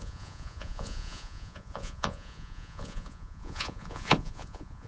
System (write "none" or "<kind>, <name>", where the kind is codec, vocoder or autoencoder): vocoder, Vocos